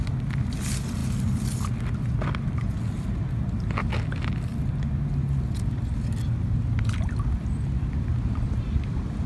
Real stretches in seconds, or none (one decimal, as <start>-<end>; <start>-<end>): 0.0-9.3